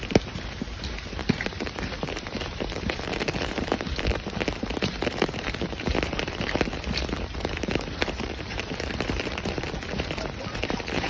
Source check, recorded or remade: remade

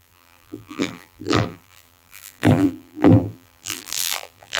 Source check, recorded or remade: remade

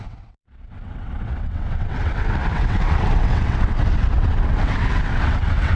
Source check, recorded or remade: remade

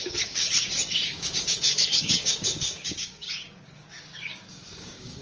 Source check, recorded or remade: remade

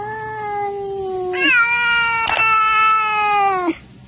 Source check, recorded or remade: recorded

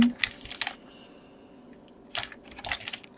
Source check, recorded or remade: recorded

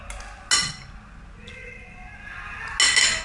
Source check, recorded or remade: recorded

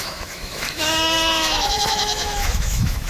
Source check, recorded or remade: remade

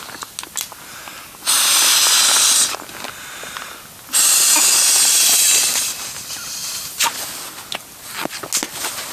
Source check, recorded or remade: recorded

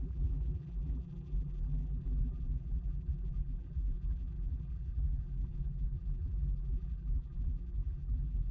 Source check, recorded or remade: remade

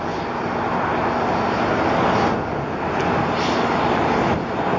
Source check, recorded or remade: recorded